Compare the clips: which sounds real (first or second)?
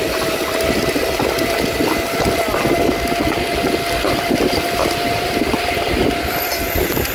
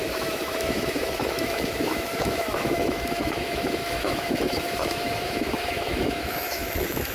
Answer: first